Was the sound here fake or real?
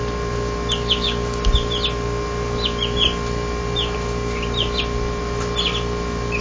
real